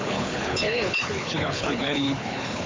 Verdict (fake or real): fake